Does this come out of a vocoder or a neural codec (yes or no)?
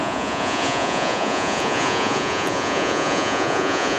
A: yes